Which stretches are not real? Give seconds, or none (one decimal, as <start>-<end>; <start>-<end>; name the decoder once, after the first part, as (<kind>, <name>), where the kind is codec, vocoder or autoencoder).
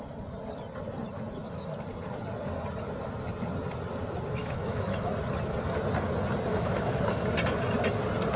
4.4-5.1 (autoencoder, DAC-VAE); 6.5-7.0